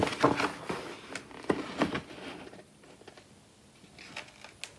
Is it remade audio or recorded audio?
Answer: recorded